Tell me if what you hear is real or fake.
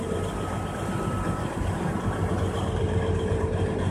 fake